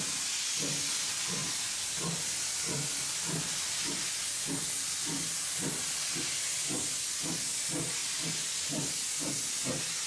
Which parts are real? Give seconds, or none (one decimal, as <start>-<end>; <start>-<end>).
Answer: 0.0-10.1